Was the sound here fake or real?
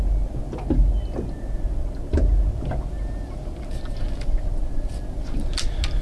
real